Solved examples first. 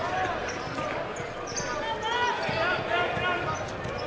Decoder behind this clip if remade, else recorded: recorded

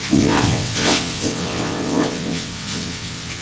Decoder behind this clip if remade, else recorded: remade, vocoder, WaveNeXt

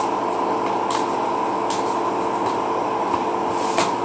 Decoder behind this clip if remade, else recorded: recorded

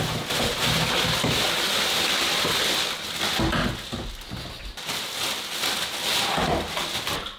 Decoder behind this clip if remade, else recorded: recorded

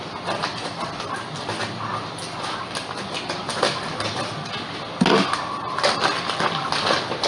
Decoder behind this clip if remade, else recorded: recorded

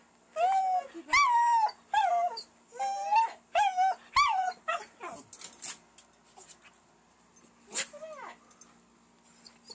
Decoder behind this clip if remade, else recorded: recorded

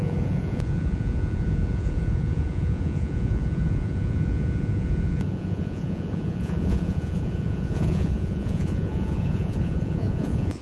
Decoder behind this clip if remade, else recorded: remade, vocoder, Vocos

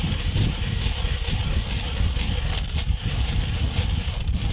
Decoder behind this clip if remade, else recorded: recorded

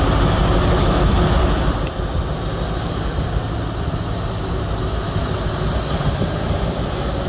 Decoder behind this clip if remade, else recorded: recorded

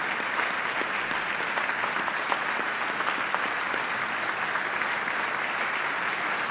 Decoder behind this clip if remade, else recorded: recorded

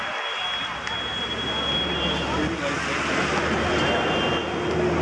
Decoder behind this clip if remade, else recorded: recorded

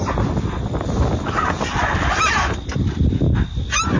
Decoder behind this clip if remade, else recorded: recorded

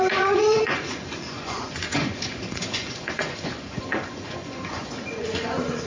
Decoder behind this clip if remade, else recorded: remade, vocoder, Vocos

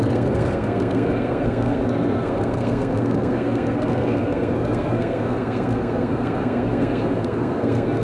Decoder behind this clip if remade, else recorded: remade, codec, SNAC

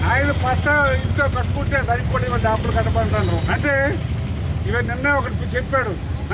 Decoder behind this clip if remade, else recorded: recorded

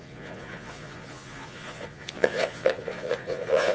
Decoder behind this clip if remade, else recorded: remade, vocoder, Vocos